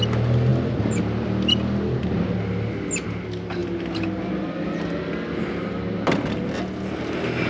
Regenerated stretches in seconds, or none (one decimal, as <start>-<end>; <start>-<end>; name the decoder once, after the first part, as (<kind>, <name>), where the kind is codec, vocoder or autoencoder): none